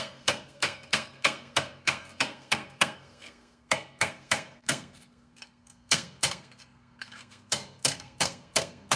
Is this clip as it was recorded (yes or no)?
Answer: no